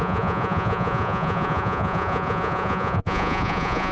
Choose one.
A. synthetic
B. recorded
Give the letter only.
A